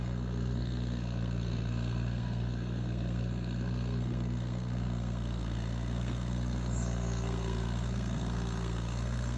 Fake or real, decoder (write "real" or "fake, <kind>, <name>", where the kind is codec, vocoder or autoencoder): fake, codec, SNAC